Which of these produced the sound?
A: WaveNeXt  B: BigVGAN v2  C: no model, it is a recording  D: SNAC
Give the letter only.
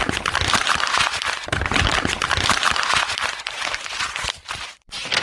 B